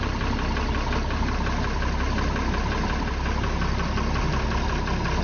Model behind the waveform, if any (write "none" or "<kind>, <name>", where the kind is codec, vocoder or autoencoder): none